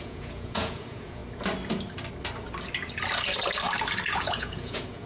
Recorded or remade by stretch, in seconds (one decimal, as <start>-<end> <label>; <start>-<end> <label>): 0.0-1.2 remade; 1.2-4.1 recorded; 4.1-5.1 remade